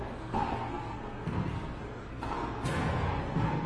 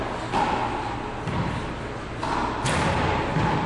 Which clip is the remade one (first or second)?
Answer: first